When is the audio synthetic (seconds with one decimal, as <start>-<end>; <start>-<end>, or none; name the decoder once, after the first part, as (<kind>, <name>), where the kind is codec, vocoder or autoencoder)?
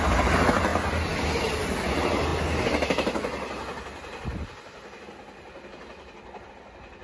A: none